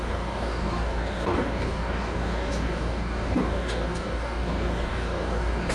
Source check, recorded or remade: remade